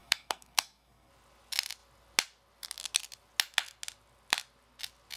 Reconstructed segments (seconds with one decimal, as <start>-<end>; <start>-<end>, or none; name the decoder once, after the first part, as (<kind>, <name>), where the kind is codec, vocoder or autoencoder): 0.0-1.1 (codec, SNAC)